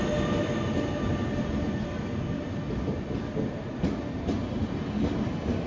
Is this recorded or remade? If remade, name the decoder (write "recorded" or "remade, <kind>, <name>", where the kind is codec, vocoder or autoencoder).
recorded